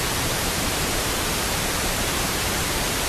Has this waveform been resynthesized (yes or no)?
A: yes